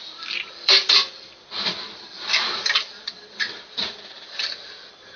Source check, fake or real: fake